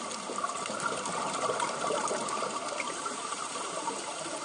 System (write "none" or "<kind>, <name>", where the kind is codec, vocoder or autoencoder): vocoder, BigVGAN v2